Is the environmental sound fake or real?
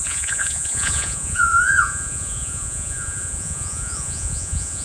fake